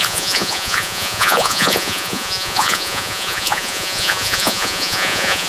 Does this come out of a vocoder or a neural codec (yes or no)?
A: yes